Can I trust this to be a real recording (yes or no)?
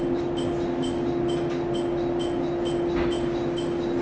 yes